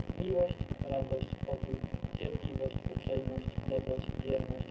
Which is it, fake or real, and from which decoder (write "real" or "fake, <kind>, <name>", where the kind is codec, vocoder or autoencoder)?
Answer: fake, vocoder, BigVGAN v2